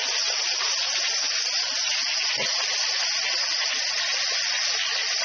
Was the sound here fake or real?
real